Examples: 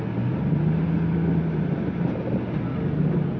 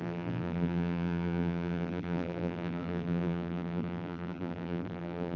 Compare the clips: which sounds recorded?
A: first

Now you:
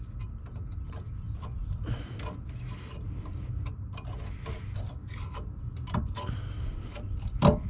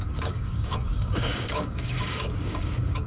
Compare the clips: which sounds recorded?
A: first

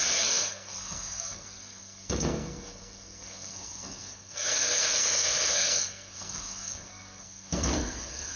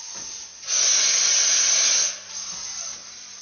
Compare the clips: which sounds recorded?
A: second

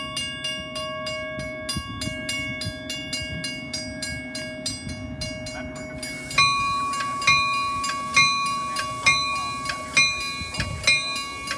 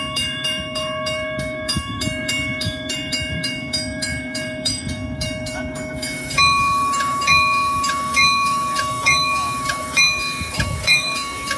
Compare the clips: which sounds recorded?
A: first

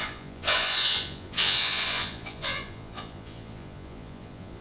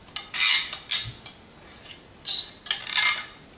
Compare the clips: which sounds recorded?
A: second